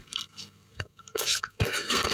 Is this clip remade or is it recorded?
remade